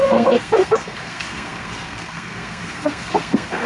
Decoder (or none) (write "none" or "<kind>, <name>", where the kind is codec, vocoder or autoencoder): codec, SNAC